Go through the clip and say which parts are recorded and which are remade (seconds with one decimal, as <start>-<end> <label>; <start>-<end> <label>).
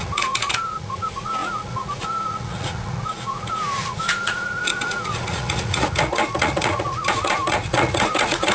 0.0-8.5 remade